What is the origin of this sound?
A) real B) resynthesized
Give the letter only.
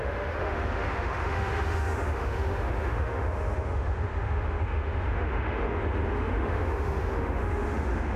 B